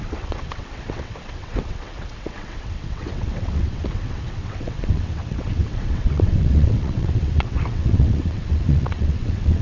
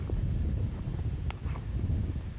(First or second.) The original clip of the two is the second